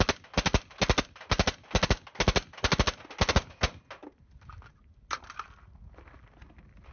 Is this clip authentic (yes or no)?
yes